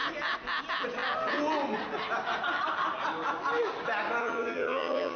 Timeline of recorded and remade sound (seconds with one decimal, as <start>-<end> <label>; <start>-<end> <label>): 0.0-4.2 recorded; 4.2-5.2 remade